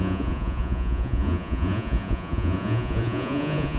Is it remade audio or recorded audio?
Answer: remade